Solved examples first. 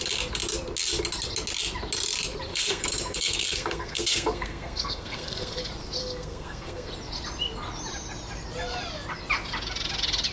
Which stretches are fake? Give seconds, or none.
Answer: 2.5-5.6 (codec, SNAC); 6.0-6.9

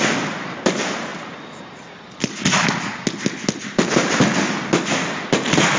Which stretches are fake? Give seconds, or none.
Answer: none

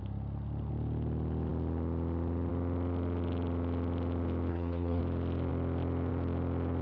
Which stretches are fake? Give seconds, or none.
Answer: 4.5-5.0 (codec, SNAC)

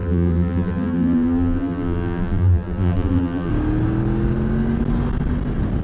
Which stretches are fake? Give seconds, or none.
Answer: 0.0-3.5 (vocoder, BigVGAN v2)

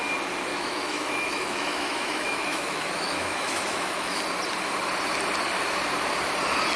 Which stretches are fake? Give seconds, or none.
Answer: 0.5-4.2 (autoencoder, DAC-VAE)

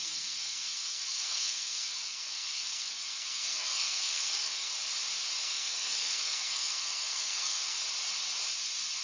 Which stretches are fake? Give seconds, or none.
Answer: 0.0-4.7 (codec, SNAC); 5.4-7.8